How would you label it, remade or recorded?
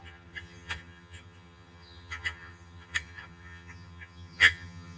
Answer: remade